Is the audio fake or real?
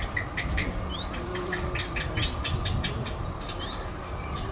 real